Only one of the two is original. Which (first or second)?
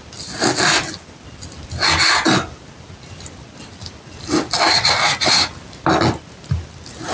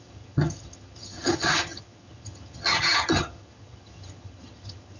first